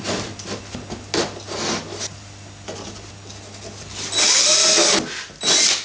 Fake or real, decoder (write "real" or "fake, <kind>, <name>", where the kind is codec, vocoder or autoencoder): real